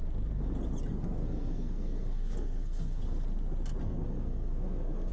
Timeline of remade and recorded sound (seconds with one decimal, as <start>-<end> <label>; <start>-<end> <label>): 0.0-0.9 recorded; 0.9-3.0 remade; 3.0-3.8 recorded; 3.8-5.1 remade